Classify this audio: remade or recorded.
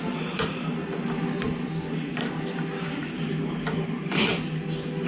recorded